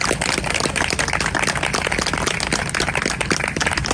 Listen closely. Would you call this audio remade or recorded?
recorded